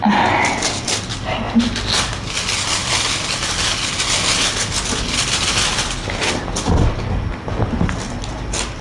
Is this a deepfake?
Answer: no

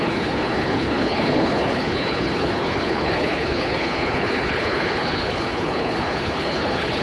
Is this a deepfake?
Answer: yes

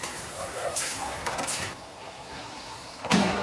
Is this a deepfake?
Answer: yes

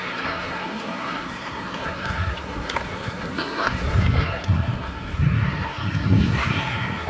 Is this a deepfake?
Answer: yes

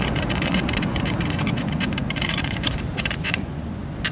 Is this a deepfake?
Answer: yes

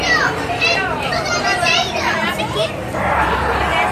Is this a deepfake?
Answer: yes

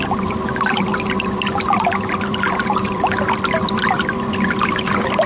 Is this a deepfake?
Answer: yes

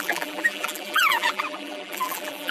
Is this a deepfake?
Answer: yes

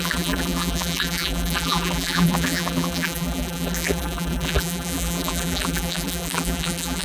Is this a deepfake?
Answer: yes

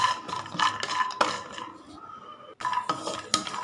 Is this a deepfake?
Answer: no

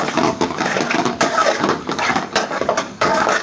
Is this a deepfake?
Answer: yes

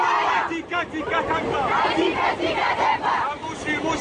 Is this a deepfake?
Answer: no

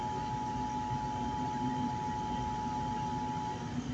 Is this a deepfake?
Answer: no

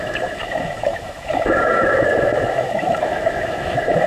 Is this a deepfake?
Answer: yes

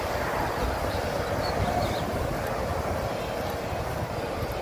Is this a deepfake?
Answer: no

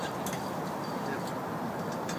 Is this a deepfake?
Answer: no